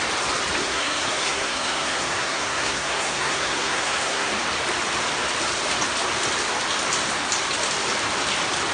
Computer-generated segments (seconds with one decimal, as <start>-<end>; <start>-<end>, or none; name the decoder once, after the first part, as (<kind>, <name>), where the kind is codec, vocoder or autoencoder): 0.6-4.3 (codec, SNAC)